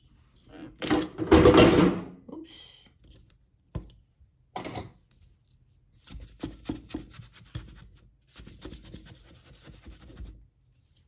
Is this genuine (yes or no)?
yes